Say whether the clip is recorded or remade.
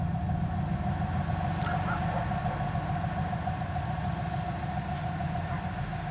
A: recorded